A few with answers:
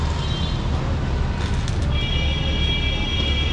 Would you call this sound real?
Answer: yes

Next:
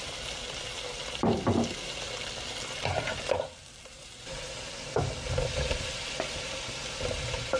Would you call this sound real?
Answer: yes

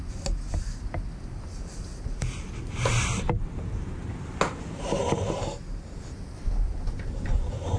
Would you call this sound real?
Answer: yes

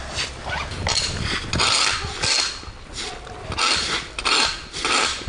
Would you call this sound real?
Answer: yes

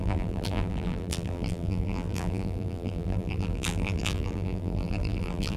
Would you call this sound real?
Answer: no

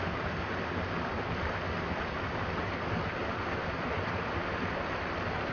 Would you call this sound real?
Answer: yes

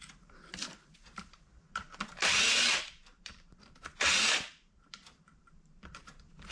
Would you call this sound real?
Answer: no